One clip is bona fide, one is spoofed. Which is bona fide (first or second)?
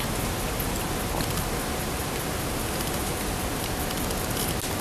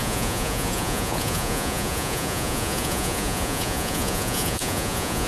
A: first